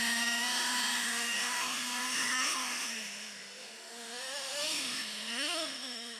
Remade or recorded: remade